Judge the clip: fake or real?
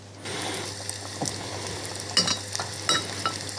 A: real